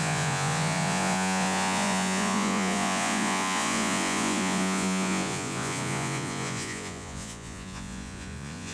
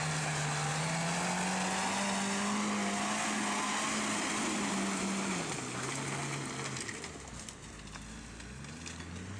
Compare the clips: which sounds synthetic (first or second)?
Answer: first